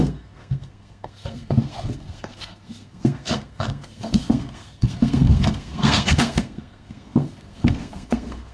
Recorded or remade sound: remade